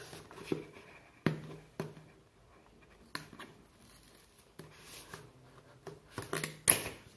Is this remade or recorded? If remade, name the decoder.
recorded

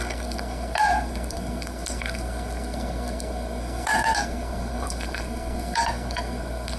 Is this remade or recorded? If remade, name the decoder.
remade, codec, SNAC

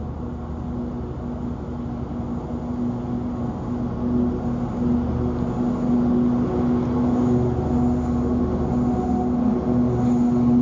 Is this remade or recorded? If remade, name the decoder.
recorded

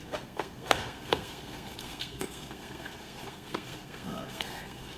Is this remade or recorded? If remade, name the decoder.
remade, codec, SNAC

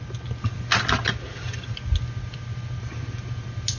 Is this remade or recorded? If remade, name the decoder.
recorded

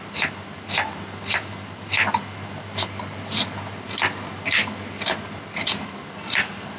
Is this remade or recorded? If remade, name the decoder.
recorded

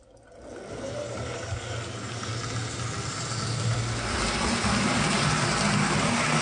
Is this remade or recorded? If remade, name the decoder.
recorded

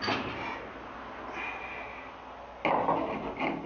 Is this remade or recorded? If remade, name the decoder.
recorded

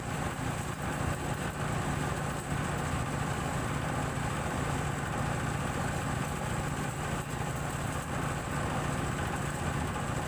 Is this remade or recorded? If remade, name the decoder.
recorded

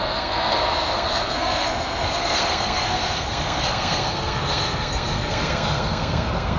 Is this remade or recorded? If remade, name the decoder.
remade, codec, SNAC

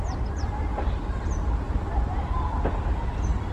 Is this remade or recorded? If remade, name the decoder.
recorded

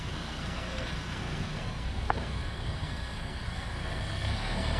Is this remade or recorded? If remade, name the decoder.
remade, codec, SNAC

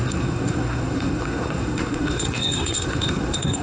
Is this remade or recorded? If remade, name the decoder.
remade, codec, SNAC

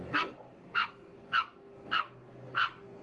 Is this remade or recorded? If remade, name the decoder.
remade, codec, SNAC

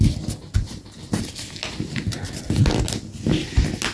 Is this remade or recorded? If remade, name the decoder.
recorded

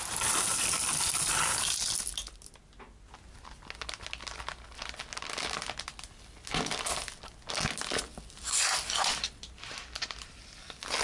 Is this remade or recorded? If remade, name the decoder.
recorded